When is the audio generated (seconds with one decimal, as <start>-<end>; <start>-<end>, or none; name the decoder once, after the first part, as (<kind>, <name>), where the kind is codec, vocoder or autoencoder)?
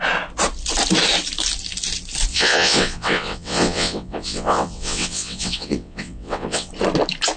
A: 2.3-6.7 (vocoder, WaveNeXt)